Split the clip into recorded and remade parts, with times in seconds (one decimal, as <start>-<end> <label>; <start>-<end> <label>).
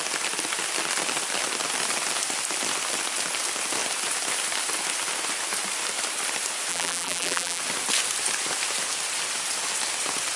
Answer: 0.0-6.7 recorded; 6.7-7.6 remade; 7.6-10.4 recorded